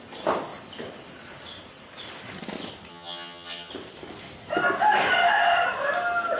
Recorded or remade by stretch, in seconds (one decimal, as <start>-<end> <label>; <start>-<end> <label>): 0.0-2.9 recorded; 2.9-3.7 remade; 3.7-6.4 recorded